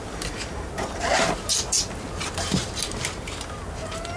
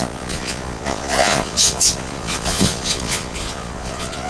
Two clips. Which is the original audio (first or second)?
first